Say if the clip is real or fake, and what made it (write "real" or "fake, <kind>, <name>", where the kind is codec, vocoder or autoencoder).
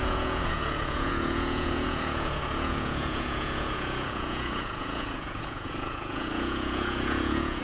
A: fake, vocoder, Vocos